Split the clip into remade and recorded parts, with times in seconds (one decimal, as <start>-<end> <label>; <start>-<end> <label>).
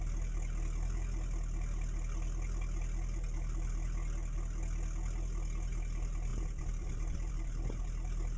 0.0-6.3 recorded; 6.3-7.3 remade; 7.3-8.4 recorded